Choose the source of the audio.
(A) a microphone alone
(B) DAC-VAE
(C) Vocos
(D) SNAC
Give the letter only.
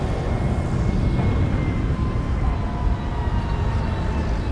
A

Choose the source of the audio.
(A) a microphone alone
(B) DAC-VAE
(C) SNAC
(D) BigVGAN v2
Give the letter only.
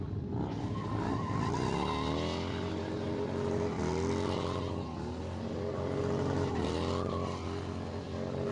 A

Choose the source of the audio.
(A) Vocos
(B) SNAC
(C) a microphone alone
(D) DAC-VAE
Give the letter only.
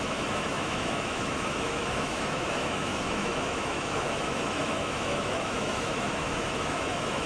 D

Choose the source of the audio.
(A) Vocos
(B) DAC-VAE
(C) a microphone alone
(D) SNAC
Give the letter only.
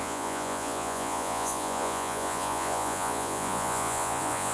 A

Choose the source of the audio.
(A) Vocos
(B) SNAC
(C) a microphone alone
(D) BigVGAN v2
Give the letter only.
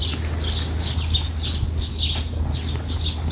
C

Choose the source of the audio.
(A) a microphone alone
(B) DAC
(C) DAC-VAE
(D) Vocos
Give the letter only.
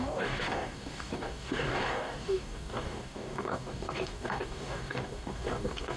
B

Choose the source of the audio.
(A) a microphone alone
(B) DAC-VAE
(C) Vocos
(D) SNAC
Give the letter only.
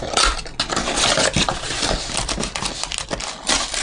A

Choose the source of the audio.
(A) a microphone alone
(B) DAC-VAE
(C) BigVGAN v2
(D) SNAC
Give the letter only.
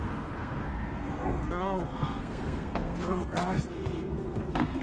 D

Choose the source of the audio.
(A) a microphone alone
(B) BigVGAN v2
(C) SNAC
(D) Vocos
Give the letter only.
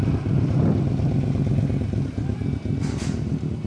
A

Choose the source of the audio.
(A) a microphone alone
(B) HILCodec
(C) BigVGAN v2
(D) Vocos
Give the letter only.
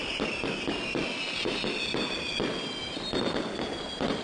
A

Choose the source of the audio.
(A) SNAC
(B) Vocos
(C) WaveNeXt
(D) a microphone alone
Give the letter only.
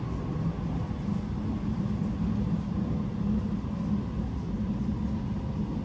D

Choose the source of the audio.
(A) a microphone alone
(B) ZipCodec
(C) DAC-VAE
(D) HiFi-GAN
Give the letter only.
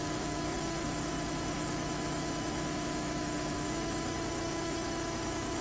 C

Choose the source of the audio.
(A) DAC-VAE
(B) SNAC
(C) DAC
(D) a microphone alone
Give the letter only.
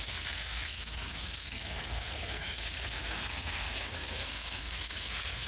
B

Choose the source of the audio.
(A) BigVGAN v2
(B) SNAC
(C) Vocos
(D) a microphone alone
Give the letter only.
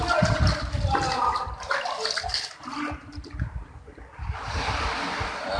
D